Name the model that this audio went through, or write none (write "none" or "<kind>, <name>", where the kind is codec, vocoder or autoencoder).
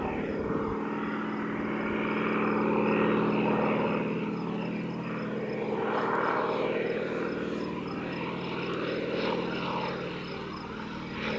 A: none